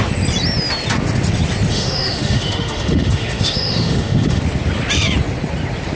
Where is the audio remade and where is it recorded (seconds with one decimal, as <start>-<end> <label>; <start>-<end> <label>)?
0.0-1.7 recorded; 1.7-4.4 remade; 4.4-6.0 recorded